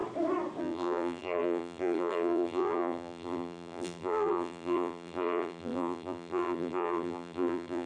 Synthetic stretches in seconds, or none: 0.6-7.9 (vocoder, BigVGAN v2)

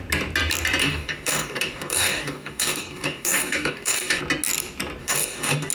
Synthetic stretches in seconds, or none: 0.8-4.2 (codec, DAC); 5.0-5.7